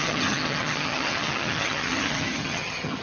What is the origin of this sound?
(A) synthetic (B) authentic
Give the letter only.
A